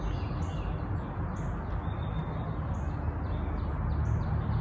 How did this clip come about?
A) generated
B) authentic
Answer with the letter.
B